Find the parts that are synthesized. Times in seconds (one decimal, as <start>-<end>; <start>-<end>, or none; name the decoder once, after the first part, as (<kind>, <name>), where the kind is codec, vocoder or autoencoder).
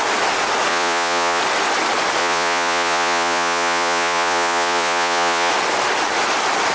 0.7-1.4 (vocoder, Vocos); 2.2-5.5